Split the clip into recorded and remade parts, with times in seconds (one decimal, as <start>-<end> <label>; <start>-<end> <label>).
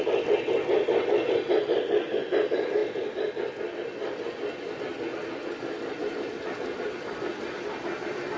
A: 0.0-8.4 recorded